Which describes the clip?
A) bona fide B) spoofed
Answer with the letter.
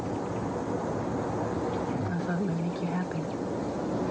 A